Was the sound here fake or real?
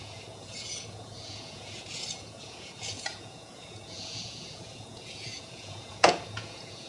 fake